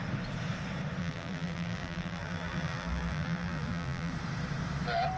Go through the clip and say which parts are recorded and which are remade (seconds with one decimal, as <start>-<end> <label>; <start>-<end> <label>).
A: 0.0-1.0 recorded; 1.0-4.1 remade; 4.1-5.2 recorded